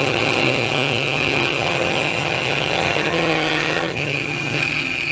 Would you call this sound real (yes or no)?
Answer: no